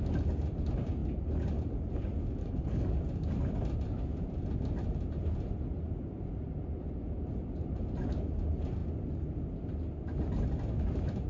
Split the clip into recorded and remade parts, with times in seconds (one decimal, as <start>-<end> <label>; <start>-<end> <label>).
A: 0.0-2.4 recorded; 2.4-3.0 remade; 3.0-11.3 recorded